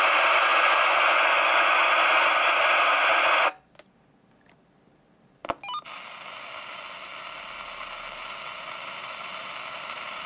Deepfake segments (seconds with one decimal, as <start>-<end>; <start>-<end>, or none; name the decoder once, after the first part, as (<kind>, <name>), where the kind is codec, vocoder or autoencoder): 0.5-1.8 (vocoder, Vocos)